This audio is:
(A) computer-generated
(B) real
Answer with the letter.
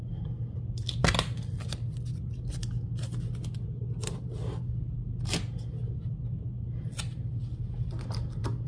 B